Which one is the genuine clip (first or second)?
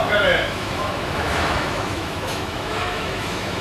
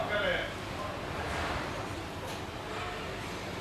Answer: second